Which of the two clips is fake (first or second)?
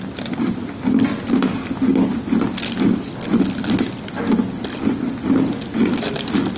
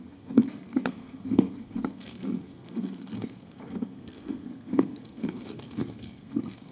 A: second